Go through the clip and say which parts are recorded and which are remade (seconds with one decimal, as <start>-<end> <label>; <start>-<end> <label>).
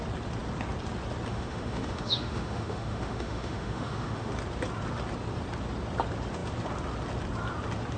0.0-1.3 recorded; 1.3-4.3 remade; 4.3-8.0 recorded